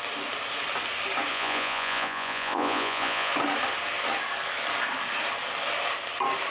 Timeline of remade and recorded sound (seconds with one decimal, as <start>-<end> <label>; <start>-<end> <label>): 0.0-1.3 recorded; 1.3-3.3 remade; 3.3-6.5 recorded